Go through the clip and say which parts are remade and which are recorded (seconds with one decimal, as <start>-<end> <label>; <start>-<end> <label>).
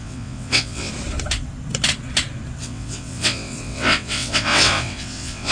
0.0-0.9 remade; 0.9-2.6 recorded; 2.6-5.5 remade